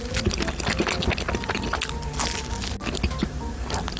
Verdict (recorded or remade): recorded